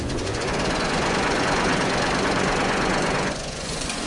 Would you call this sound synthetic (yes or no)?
yes